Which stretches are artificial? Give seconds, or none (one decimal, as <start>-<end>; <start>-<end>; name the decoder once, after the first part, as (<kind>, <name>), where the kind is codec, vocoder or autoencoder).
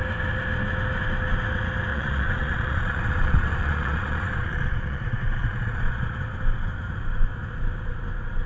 1.9-6.1 (vocoder, Vocos)